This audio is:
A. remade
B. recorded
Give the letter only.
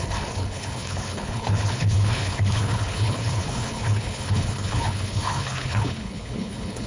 A